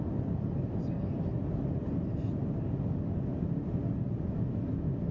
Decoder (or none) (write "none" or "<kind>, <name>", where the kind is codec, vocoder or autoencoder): none